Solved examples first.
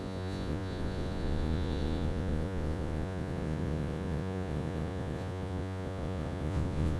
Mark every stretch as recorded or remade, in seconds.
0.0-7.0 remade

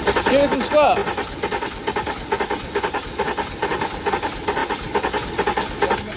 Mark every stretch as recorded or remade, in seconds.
0.0-6.2 recorded